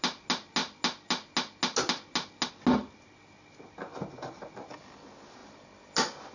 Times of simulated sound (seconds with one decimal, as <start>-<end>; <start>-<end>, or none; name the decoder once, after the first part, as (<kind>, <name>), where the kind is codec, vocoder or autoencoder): none